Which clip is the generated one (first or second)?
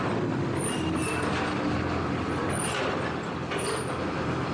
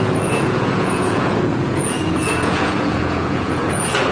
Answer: second